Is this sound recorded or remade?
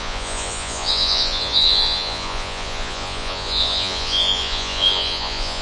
remade